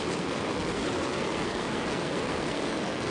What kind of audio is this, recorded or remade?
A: remade